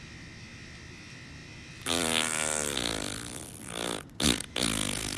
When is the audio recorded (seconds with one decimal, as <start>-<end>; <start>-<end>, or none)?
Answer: 0.0-5.2